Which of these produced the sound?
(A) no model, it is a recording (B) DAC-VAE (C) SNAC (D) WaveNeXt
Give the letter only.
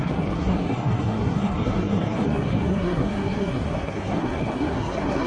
C